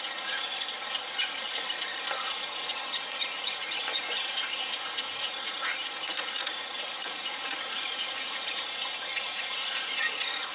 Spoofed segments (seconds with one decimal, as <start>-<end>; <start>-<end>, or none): 0.0-0.5; 2.3-10.5